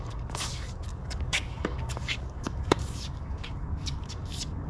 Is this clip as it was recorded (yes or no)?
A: no